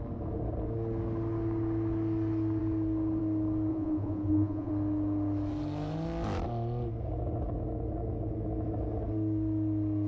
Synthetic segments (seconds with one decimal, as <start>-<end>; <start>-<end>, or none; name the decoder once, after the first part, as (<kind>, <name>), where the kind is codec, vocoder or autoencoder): 3.7-4.7 (vocoder, Vocos)